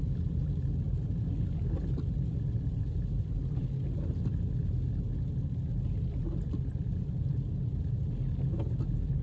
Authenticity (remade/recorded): recorded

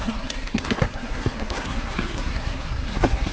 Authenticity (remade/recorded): remade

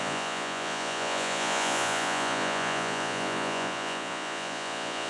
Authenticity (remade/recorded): remade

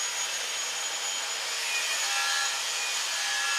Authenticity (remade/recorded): recorded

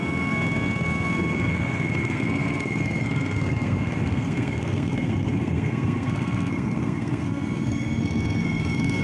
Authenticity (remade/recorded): remade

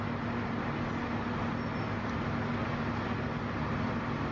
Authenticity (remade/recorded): recorded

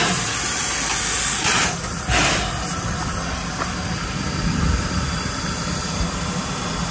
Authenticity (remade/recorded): recorded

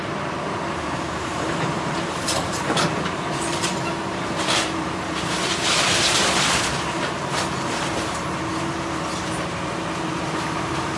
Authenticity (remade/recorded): remade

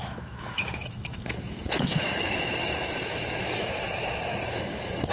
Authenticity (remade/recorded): remade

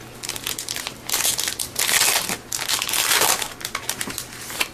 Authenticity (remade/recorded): recorded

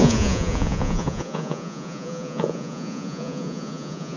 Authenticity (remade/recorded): remade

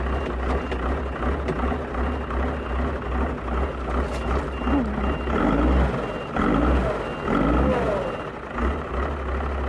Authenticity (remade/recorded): recorded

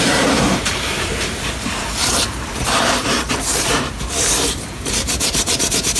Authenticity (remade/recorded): remade